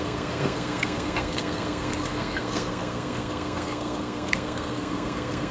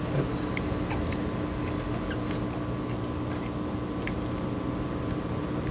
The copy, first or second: first